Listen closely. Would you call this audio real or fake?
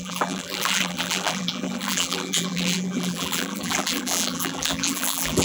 fake